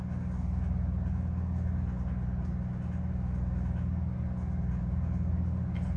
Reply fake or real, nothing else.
real